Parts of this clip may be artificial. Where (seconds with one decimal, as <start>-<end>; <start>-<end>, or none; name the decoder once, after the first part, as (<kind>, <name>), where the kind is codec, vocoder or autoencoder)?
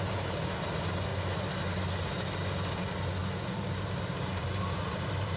3.2-5.4 (vocoder, BigVGAN v2)